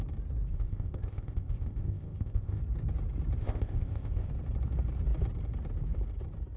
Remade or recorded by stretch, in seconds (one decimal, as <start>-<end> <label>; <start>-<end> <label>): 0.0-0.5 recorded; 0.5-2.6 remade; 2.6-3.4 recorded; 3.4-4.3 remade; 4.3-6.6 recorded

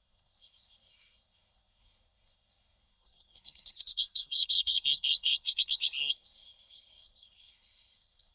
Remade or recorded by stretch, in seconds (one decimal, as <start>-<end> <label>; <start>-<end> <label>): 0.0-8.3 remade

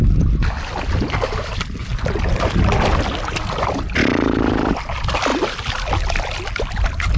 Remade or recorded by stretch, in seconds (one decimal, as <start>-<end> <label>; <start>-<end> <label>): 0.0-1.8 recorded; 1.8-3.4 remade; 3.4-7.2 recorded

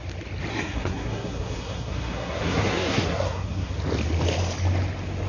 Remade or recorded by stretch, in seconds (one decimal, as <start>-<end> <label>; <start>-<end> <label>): 0.0-0.5 recorded; 0.5-3.7 remade; 3.7-5.3 recorded

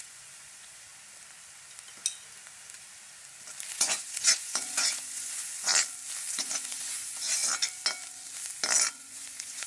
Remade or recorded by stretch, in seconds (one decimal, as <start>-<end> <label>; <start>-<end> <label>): 0.0-0.9 remade; 0.9-3.7 recorded; 3.7-5.7 remade; 5.7-6.3 recorded; 6.3-7.4 remade; 7.4-8.9 recorded; 8.9-9.7 remade